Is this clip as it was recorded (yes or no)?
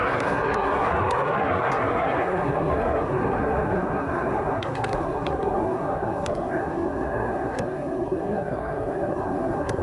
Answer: no